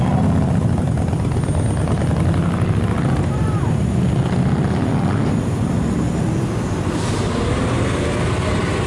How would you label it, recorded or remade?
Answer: recorded